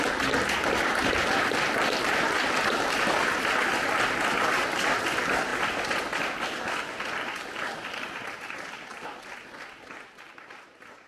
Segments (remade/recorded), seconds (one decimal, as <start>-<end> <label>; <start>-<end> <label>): 0.0-11.1 recorded